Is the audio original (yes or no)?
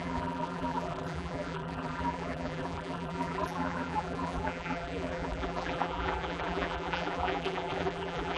no